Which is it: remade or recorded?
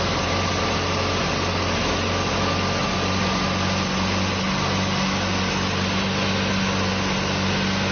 recorded